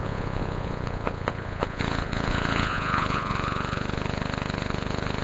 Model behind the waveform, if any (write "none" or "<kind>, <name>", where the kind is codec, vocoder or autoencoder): vocoder, Vocos